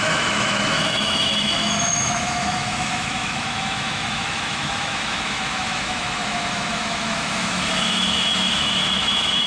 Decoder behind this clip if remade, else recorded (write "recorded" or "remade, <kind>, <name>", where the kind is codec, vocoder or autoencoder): remade, autoencoder, DAC-VAE